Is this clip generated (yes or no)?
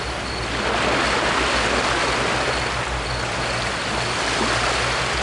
no